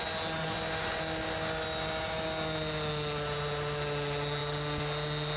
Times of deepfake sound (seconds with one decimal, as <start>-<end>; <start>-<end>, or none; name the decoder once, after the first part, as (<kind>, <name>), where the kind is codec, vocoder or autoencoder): none